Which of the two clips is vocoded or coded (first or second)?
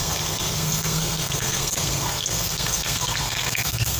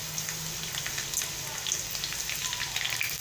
first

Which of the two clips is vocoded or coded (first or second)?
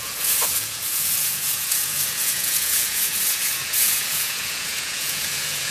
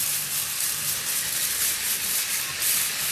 first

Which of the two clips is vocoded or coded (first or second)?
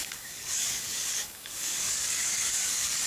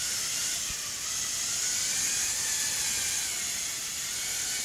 first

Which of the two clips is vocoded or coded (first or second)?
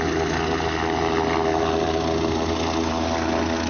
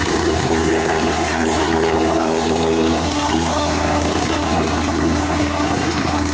second